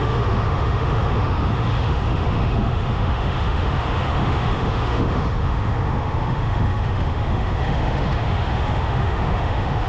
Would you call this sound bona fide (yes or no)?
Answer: no